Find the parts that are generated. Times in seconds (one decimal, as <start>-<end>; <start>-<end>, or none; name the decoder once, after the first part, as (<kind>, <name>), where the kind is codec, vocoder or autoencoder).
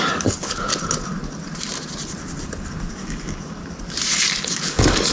0.0-0.7 (codec, DAC); 2.9-3.6; 4.4-5.1